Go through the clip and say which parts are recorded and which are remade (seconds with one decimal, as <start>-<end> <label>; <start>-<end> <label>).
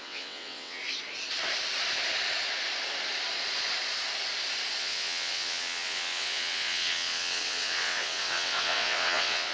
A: 0.0-0.8 remade; 0.8-4.8 recorded; 4.8-9.5 remade